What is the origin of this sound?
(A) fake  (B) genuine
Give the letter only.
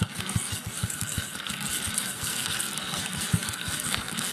A